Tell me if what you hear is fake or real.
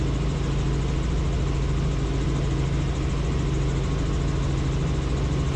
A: real